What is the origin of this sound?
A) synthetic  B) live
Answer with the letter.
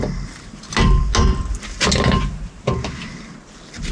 B